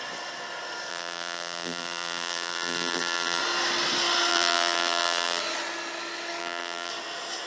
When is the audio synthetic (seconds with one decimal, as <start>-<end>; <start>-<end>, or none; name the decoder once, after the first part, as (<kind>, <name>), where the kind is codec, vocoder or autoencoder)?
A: 0.9-3.4 (vocoder, BigVGAN v2); 4.3-5.4; 6.4-6.9